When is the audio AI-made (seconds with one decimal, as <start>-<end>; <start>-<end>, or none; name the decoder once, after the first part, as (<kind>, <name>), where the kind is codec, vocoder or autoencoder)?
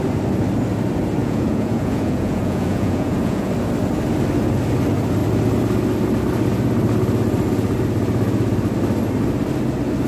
1.2-3.5 (vocoder, Vocos)